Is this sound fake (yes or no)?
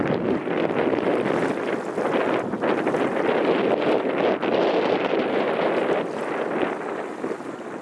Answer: no